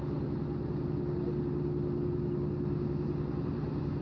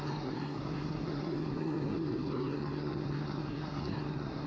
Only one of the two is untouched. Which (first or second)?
first